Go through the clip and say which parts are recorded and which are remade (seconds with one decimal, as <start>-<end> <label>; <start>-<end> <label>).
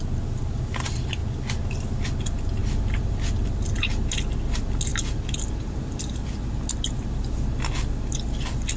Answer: 0.0-8.8 recorded